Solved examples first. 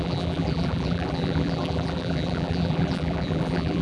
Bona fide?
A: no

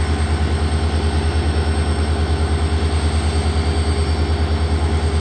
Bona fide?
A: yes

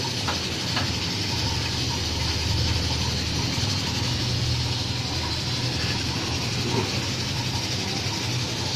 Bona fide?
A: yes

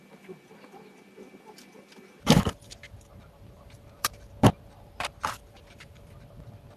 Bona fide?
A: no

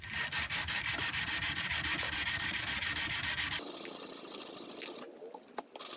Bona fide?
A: no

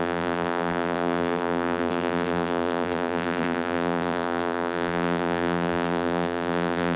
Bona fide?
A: no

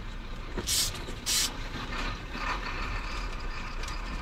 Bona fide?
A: no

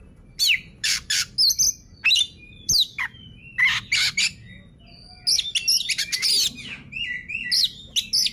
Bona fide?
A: yes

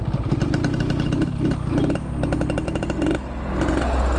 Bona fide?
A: yes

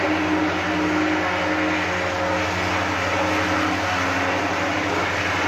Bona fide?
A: yes